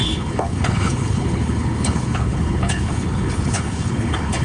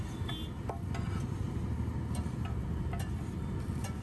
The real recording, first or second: second